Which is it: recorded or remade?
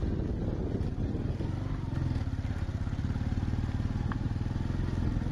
recorded